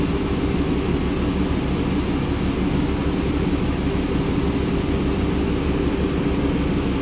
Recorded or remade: recorded